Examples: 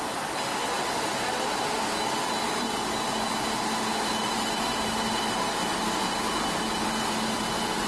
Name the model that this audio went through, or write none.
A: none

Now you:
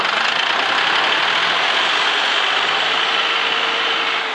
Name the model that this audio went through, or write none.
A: none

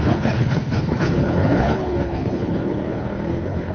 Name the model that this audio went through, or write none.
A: codec, HILCodec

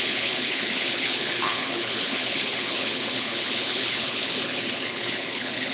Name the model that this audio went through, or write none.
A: codec, HILCodec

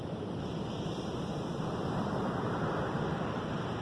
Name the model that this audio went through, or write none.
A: none